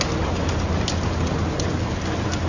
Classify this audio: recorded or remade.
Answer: recorded